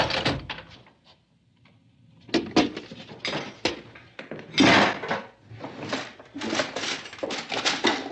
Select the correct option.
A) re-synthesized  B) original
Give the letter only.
B